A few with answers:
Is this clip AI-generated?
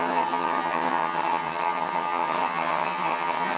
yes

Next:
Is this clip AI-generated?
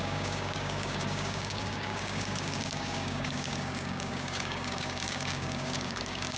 yes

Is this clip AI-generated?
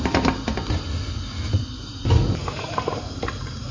no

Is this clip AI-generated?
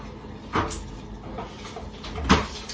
no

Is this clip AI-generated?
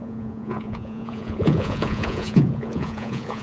yes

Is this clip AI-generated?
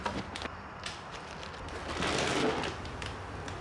no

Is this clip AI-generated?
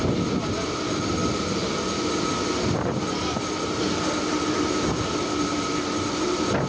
no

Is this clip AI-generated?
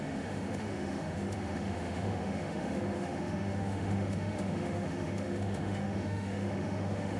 yes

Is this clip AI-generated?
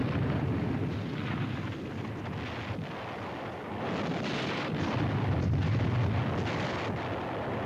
no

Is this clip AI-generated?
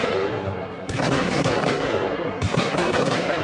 yes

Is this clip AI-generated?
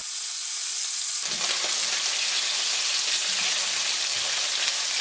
no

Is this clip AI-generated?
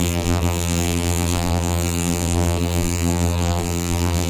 yes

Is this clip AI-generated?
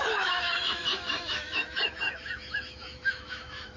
yes